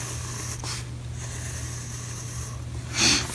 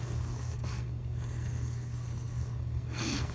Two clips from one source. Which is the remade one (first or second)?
second